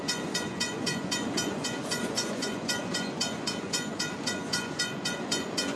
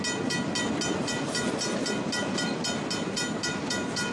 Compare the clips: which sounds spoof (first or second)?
first